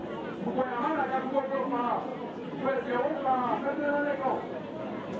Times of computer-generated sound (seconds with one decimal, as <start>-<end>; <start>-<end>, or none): none